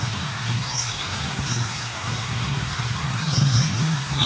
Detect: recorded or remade remade